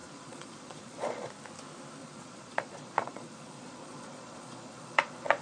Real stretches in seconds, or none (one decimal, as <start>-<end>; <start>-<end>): 1.3-2.0